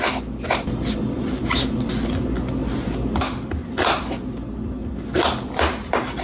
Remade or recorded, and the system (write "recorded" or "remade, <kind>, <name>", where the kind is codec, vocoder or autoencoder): recorded